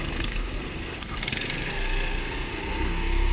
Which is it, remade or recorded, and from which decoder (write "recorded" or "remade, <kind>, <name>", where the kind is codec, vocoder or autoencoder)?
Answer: remade, codec, SNAC